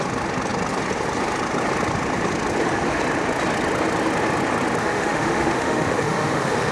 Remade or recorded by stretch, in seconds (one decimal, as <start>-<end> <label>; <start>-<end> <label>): 0.0-4.8 recorded; 4.8-6.7 remade